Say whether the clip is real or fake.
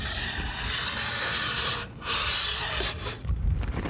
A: real